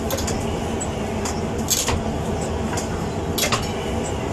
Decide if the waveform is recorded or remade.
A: recorded